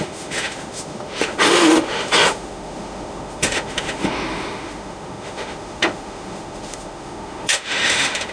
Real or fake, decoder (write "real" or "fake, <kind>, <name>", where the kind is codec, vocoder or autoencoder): fake, autoencoder, DAC-VAE